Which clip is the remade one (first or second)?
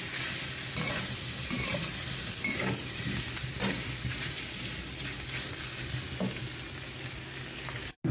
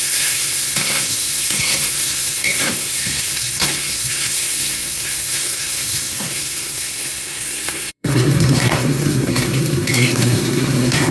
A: second